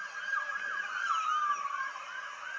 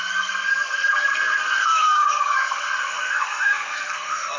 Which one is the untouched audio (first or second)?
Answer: first